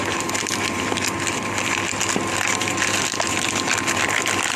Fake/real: real